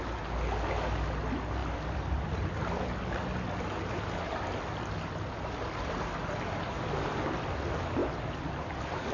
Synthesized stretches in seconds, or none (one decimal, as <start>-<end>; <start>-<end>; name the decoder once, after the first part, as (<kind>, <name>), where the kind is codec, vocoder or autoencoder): 1.6-3.0 (vocoder, BigVGAN v2)